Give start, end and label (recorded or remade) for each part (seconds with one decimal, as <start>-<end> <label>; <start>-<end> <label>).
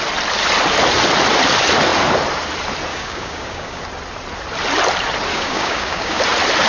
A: 0.0-2.9 recorded; 2.9-3.8 remade; 3.8-5.3 recorded; 5.3-6.2 remade; 6.2-6.7 recorded